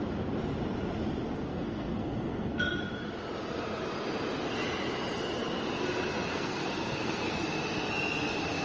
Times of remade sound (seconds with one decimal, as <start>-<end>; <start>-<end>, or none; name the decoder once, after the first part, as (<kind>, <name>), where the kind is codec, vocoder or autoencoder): 1.5-2.8 (codec, SNAC); 6.3-7.4